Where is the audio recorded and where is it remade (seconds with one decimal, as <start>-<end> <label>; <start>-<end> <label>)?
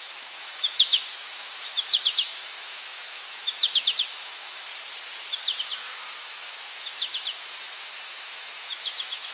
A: 0.0-4.7 remade; 4.7-5.6 recorded; 5.6-9.3 remade